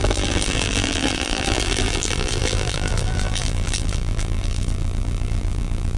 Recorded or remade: remade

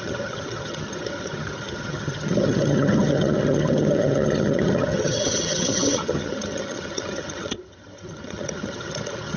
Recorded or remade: remade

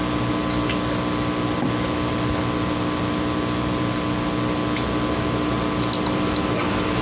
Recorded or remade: recorded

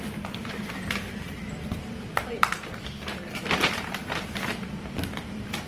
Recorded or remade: remade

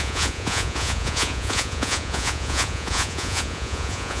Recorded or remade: remade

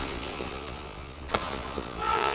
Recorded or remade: remade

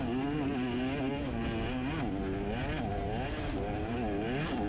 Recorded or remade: recorded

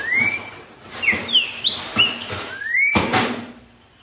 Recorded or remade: remade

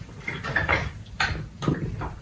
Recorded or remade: recorded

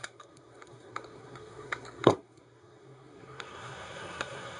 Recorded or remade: remade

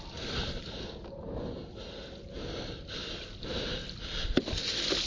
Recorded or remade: recorded